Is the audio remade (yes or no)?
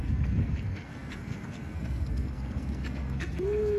yes